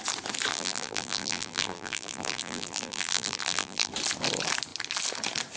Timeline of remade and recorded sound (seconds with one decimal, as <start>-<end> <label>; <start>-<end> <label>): 0.0-0.5 recorded; 0.5-3.9 remade; 3.9-5.6 recorded